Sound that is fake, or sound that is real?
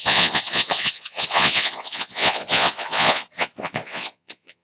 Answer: fake